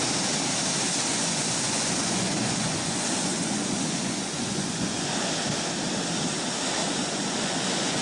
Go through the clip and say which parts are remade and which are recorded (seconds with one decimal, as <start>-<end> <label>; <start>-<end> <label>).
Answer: 0.0-1.1 recorded; 1.1-5.3 remade; 5.3-6.8 recorded; 6.8-8.0 remade